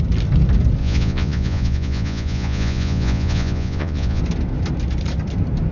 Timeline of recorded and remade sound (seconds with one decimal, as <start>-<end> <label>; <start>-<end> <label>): 0.0-0.8 recorded; 0.8-4.2 remade; 4.2-5.7 recorded